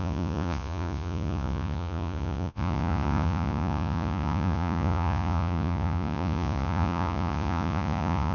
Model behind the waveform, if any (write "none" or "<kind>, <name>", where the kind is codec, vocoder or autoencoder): vocoder, Vocos